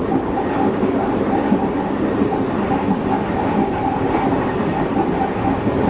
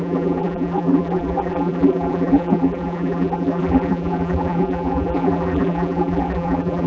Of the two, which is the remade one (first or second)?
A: second